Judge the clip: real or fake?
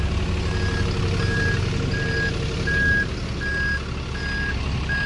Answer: real